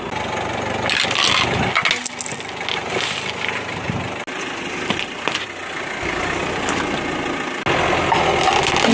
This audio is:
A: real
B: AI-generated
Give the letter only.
A